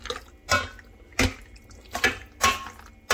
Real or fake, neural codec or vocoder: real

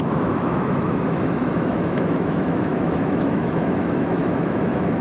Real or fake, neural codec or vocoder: fake, autoencoder, DAC-VAE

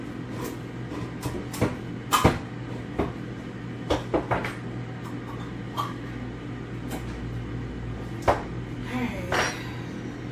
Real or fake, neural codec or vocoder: real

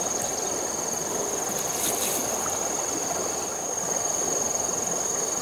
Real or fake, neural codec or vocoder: real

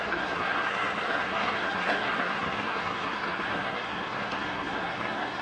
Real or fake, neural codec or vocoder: fake, codec, SNAC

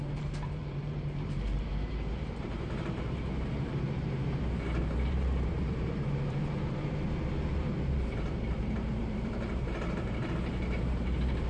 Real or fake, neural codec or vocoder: fake, vocoder, BigVGAN v2